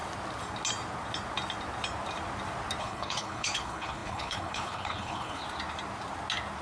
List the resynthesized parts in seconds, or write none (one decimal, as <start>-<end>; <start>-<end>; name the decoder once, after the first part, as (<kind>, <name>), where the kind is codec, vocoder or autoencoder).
2.8-5.4 (codec, HILCodec)

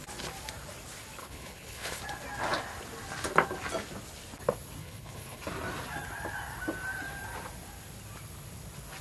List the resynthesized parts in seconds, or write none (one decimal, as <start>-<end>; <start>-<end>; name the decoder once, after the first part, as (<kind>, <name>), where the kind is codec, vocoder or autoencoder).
1.2-2.0 (codec, HILCodec); 4.8-5.4

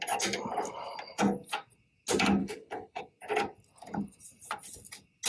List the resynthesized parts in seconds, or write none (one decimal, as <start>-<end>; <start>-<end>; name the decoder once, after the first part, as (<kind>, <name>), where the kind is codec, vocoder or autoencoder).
2.4-3.0 (codec, HILCodec)

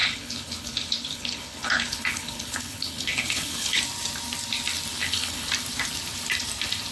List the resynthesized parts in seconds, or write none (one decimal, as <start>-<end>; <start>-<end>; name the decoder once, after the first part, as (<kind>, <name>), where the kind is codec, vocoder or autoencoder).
0.0-3.8 (codec, HILCodec); 5.0-5.5

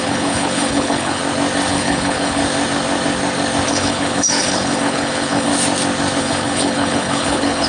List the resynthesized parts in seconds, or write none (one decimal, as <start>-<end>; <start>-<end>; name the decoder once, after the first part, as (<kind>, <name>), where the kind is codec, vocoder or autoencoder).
0.0-1.2 (codec, HILCodec); 1.7-2.4; 3.7-5.5; 6.2-7.7